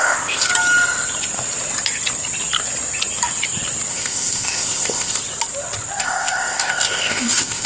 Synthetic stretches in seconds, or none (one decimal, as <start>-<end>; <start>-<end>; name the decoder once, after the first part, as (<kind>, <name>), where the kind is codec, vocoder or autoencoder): 0.0-0.5 (codec, ZipCodec); 3.9-5.2; 6.0-7.7